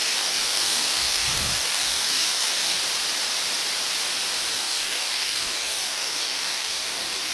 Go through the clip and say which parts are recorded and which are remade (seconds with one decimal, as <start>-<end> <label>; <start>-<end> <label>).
0.0-2.8 remade; 2.8-4.5 recorded; 4.5-7.3 remade